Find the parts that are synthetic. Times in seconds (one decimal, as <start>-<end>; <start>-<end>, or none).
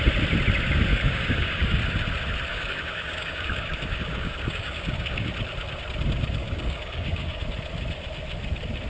0.9-1.8; 2.5-5.3; 6.4-7.4